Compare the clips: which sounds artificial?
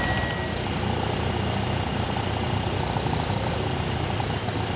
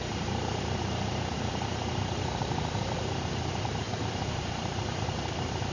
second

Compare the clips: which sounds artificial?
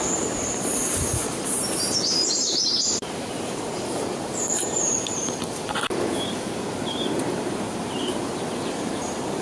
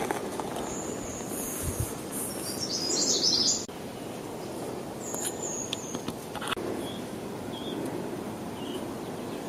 first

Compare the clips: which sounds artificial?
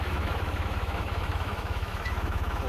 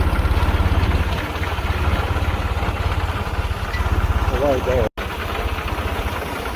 first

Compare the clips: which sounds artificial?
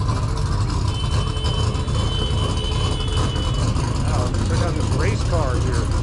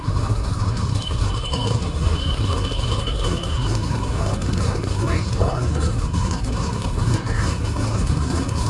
second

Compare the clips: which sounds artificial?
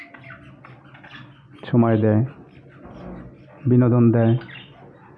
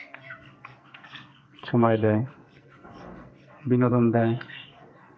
second